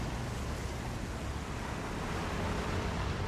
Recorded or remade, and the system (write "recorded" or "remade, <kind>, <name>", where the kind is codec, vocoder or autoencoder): recorded